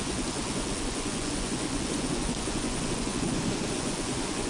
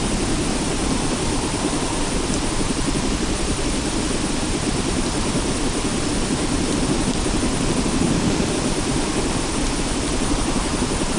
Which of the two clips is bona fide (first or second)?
second